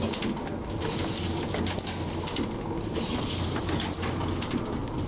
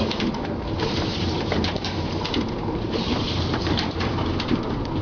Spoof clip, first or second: second